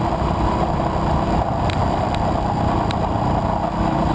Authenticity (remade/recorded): recorded